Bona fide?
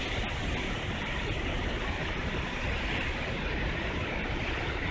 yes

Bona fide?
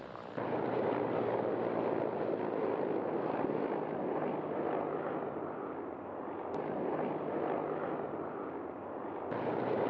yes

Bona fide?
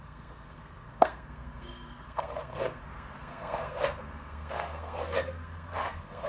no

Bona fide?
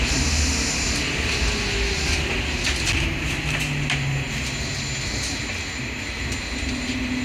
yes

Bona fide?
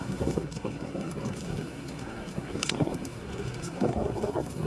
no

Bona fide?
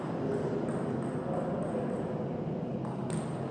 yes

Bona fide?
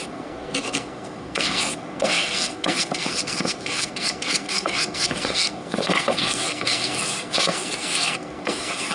no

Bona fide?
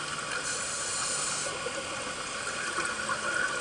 yes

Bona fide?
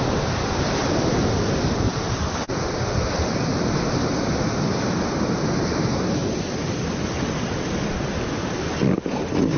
yes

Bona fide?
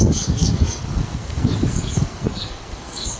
no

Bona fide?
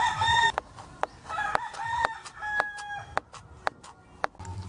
yes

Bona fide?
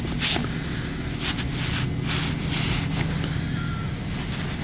yes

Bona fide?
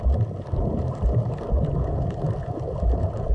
yes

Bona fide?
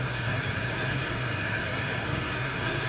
no